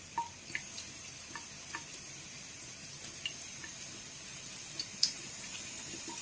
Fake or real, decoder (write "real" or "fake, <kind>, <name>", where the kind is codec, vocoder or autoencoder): real